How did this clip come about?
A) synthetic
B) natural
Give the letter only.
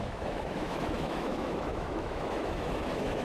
A